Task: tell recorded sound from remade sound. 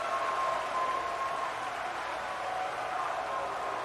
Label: remade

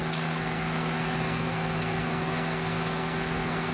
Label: remade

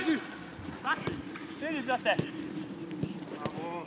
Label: recorded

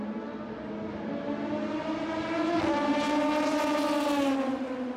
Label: recorded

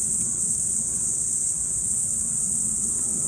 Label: remade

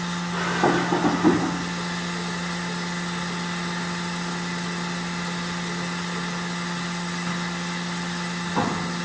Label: recorded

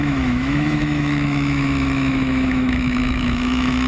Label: remade